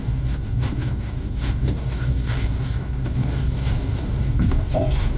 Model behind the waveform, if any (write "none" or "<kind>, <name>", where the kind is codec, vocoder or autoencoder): codec, DAC